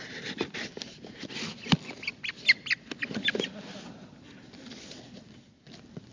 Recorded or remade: recorded